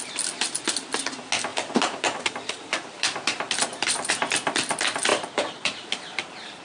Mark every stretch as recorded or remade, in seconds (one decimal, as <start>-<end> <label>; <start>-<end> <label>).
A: 0.0-1.5 recorded; 1.5-4.1 remade; 4.1-5.1 recorded; 5.1-6.6 remade